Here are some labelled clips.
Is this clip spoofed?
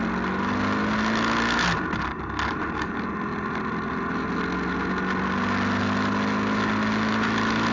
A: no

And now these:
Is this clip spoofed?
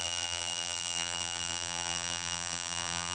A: yes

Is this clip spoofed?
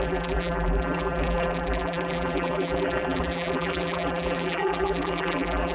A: yes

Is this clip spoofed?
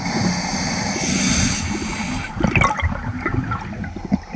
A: no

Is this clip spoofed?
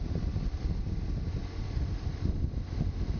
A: no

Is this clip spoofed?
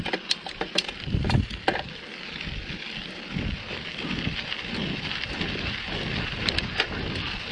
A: no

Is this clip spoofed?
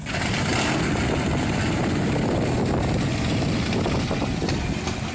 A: no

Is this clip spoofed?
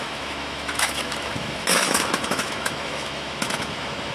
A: yes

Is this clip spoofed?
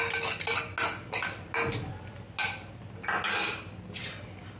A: no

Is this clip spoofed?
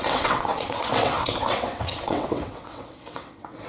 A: yes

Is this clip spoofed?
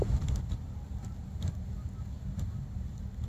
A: no